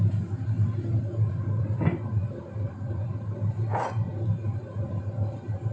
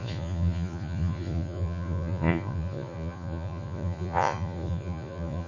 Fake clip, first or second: second